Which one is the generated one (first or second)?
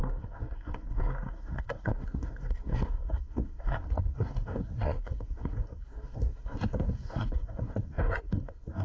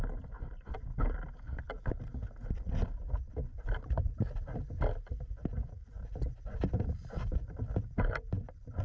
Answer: first